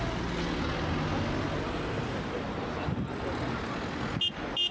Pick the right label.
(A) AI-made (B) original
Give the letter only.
B